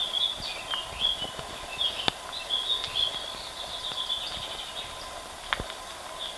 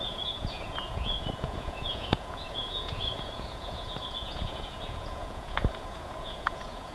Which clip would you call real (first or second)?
first